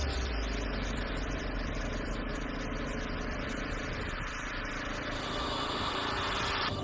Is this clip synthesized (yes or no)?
yes